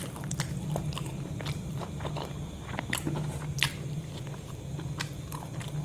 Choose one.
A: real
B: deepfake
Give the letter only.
B